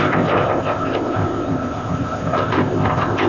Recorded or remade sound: remade